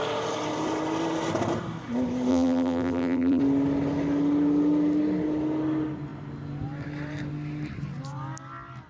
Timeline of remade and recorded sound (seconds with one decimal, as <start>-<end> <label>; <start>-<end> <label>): 0.0-2.3 recorded; 2.3-3.4 remade; 3.4-8.9 recorded